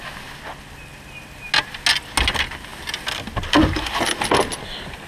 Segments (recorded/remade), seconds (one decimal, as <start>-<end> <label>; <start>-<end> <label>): 0.0-5.1 recorded